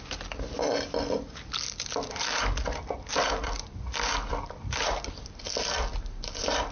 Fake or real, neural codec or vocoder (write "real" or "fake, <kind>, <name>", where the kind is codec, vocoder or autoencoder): real